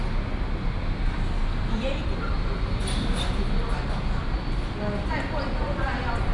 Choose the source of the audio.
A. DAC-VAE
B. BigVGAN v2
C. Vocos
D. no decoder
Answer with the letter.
D